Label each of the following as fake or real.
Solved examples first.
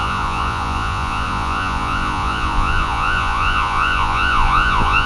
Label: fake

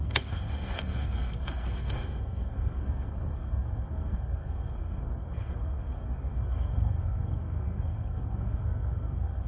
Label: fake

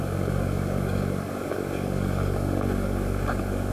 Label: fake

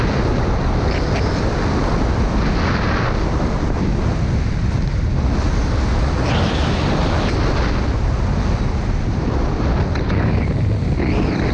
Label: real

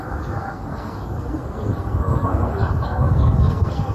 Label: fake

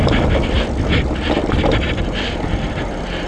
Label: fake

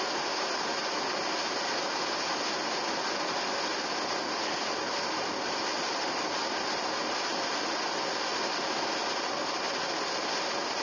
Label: real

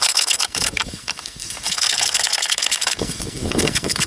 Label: fake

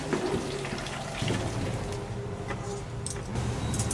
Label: real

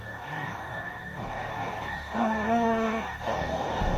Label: fake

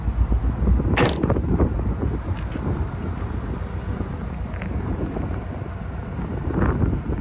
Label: real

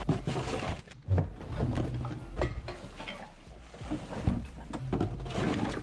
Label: real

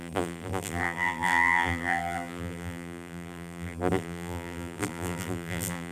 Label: fake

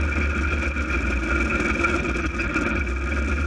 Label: real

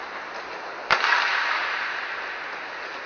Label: real